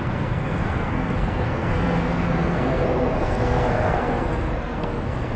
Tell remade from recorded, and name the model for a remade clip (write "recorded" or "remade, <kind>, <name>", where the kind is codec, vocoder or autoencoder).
remade, codec, SNAC